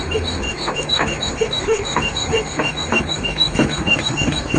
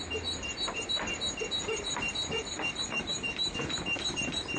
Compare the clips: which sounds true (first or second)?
second